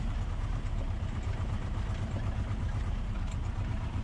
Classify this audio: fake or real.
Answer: fake